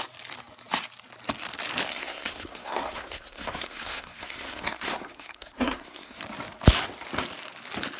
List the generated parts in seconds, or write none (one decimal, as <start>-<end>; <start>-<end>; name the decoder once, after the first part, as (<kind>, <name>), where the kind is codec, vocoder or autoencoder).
1.9-6.2 (codec, SNAC)